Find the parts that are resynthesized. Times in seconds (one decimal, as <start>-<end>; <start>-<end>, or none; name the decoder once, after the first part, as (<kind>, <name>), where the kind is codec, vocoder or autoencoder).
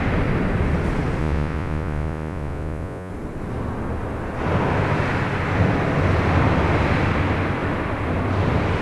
1.2-3.1 (vocoder, Vocos)